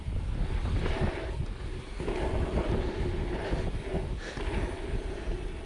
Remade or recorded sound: recorded